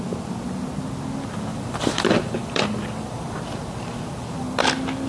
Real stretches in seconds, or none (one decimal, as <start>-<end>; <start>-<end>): 0.0-1.5; 4.6-5.1